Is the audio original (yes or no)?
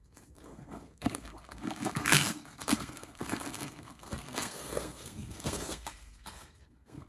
no